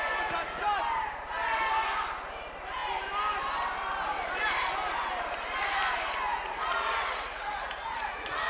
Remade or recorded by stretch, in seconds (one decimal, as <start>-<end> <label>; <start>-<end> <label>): 0.0-6.3 recorded; 6.3-8.5 remade